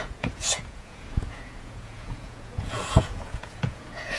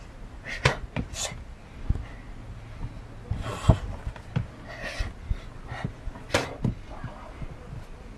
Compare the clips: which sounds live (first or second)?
second